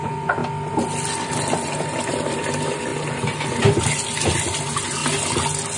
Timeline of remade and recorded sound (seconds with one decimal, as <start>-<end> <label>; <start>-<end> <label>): 0.0-0.4 remade; 0.4-2.1 recorded; 2.1-2.9 remade; 2.9-4.6 recorded; 4.6-5.0 remade; 5.0-5.8 recorded